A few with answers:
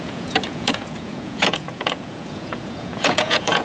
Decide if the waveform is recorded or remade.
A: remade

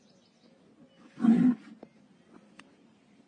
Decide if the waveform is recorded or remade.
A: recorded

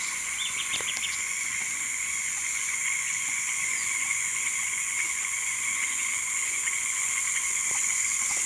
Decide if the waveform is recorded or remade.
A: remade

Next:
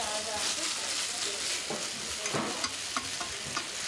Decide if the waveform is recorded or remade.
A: recorded